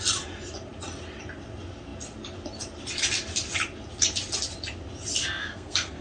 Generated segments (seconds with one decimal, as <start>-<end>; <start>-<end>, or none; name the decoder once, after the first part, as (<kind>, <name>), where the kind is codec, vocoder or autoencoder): 5.2-6.0 (codec, SNAC)